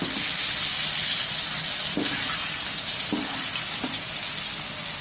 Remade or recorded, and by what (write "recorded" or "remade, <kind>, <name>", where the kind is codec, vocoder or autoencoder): recorded